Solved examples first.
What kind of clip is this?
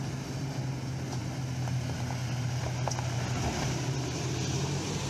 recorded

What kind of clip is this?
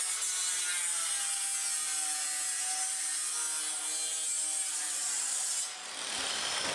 recorded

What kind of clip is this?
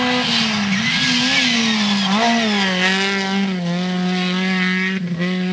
recorded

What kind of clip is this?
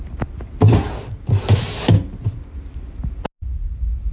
recorded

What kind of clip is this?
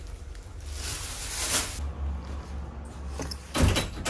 recorded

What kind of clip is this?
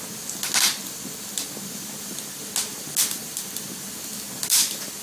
recorded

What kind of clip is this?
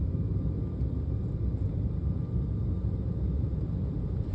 remade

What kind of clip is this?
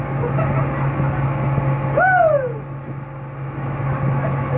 recorded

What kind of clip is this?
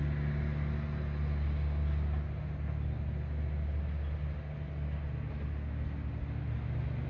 recorded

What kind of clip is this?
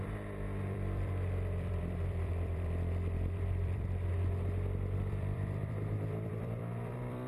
remade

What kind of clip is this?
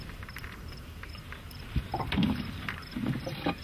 remade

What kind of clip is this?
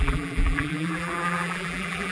remade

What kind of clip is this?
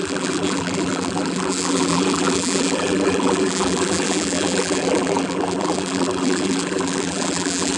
remade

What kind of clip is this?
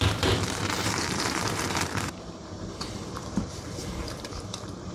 remade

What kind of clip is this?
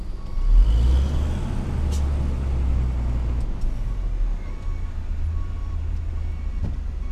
recorded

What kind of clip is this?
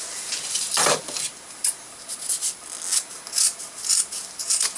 recorded